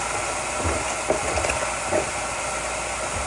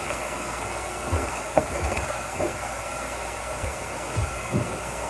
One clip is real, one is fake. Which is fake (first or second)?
second